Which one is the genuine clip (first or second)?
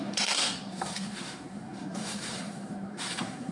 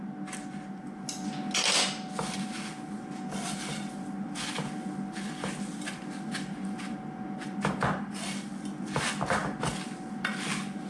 second